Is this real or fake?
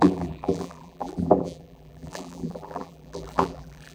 fake